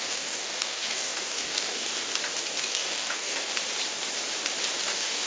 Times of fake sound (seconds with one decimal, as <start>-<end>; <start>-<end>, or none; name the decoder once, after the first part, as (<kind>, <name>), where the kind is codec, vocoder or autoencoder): 0.0-2.1 (codec, DAC); 2.6-3.5; 4.8-5.3